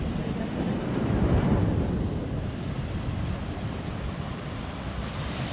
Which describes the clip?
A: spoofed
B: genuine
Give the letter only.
A